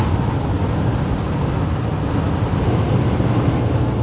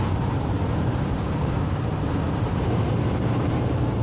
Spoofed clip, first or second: second